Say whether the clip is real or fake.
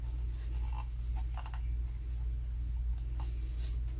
real